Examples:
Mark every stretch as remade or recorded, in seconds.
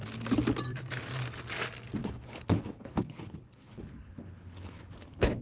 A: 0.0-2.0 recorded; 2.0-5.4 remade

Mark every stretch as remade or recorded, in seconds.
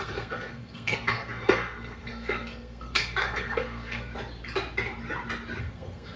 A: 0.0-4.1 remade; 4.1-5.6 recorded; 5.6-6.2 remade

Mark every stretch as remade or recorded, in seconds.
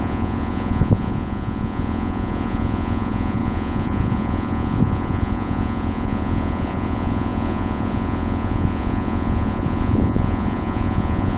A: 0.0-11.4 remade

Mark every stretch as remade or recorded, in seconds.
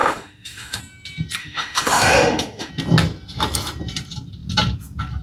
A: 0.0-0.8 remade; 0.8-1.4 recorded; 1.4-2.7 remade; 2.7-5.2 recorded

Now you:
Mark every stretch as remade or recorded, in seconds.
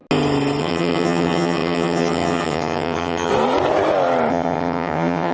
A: 0.0-0.6 recorded; 0.6-3.3 remade; 3.3-4.3 recorded; 4.3-5.3 remade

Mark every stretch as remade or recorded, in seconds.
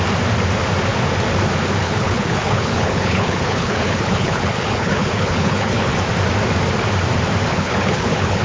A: 0.0-1.8 recorded; 1.8-5.9 remade; 5.9-7.5 recorded; 7.5-8.4 remade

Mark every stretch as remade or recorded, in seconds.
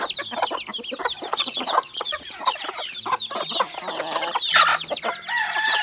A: 0.0-1.3 recorded; 1.3-2.6 remade; 2.6-5.8 recorded